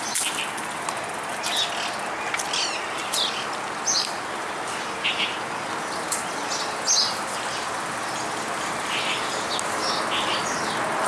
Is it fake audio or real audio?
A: real